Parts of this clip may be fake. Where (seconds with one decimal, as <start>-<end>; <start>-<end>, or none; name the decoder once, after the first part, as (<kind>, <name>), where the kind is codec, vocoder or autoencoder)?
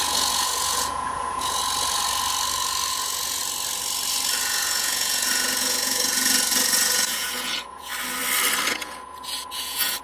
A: 0.0-1.6 (vocoder, Vocos); 2.9-3.4; 4.4-7.9; 8.7-10.0